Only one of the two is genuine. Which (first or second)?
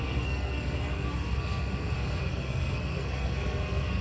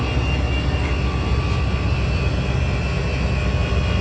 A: second